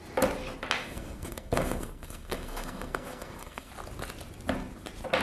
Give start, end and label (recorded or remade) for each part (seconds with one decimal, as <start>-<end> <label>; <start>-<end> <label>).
0.0-0.8 recorded; 0.8-3.7 remade; 3.7-5.2 recorded